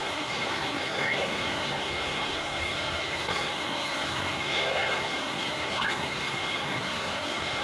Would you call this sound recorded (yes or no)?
no